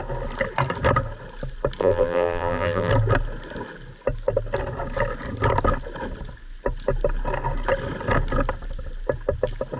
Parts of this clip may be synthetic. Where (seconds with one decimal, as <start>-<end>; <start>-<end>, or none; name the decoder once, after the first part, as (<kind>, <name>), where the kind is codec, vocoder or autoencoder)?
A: 1.8-2.9 (vocoder, BigVGAN v2)